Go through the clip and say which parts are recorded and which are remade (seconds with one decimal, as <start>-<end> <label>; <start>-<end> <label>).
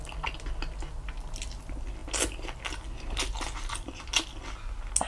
0.0-5.1 recorded